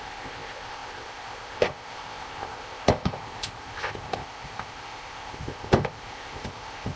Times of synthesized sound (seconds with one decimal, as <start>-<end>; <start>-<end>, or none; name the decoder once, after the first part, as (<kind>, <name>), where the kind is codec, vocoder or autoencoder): 0.0-7.0 (codec, ZipCodec)